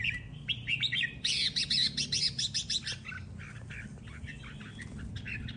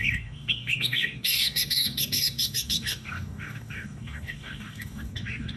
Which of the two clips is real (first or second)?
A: first